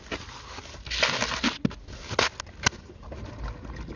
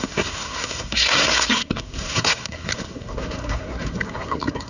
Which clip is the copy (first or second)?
second